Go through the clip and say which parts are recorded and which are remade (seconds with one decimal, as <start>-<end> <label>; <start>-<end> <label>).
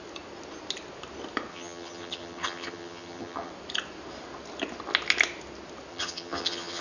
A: 0.0-1.5 recorded; 1.5-3.5 remade; 3.5-5.9 recorded; 5.9-6.8 remade